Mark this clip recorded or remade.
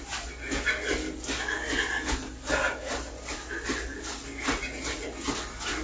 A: recorded